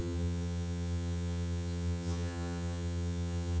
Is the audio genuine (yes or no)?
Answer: no